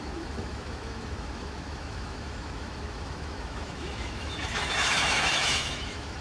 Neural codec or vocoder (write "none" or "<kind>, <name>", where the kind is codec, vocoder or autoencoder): autoencoder, DAC-VAE